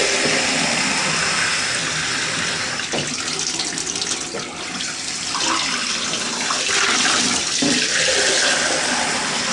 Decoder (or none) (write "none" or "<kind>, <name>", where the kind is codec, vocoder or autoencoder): none